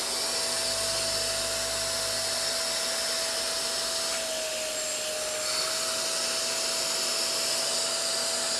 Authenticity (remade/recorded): recorded